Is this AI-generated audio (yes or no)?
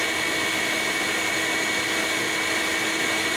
no